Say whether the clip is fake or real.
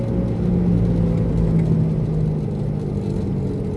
real